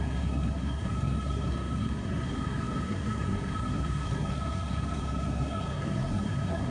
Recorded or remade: remade